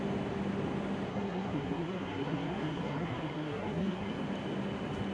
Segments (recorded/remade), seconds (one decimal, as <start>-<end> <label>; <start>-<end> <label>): 0.0-1.1 recorded; 1.1-4.2 remade; 4.2-5.1 recorded